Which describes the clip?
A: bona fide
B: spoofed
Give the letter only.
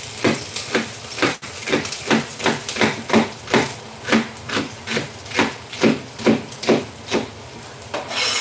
A